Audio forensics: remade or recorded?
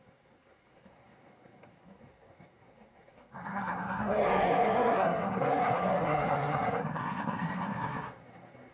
remade